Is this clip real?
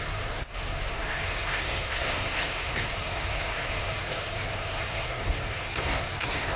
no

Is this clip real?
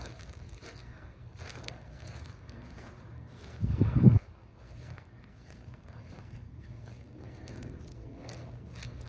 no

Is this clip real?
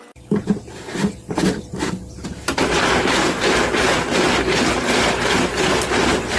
yes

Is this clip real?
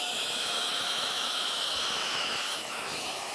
no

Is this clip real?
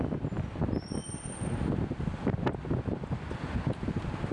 yes